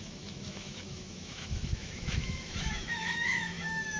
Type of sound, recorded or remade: remade